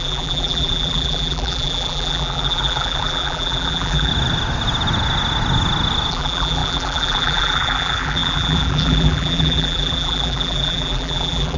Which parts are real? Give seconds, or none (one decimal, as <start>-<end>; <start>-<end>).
4.1-6.1